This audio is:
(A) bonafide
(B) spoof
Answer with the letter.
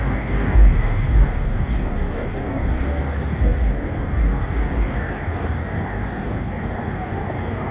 B